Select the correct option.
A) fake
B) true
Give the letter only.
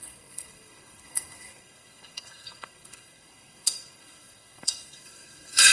A